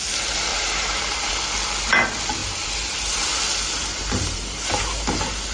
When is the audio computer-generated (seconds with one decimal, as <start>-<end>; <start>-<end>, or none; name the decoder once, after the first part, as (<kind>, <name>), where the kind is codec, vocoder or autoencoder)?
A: 0.5-1.3 (vocoder, BigVGAN v2); 2.4-3.3; 3.8-4.8